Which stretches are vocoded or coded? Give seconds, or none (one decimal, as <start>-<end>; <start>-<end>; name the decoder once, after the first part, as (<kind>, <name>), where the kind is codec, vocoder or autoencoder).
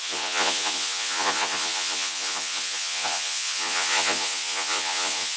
0.0-5.4 (vocoder, Vocos)